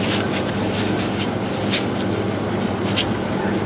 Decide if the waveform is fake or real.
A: real